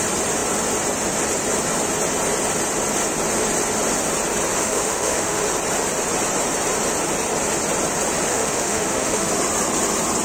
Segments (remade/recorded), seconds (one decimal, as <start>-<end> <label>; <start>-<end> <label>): 0.0-4.6 recorded; 4.6-5.4 remade; 5.4-8.3 recorded; 8.3-9.3 remade; 9.3-10.2 recorded